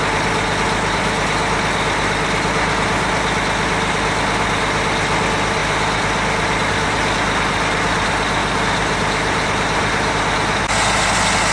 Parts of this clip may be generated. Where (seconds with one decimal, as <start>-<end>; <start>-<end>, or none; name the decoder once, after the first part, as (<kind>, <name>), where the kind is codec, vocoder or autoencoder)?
8.4-10.1 (vocoder, BigVGAN v2)